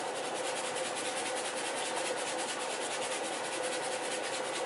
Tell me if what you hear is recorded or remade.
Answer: recorded